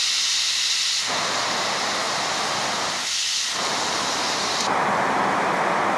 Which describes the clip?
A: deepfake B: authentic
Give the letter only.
B